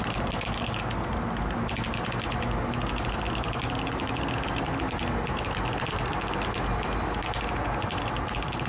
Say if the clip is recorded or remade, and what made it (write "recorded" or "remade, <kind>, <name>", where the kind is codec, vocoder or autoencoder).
recorded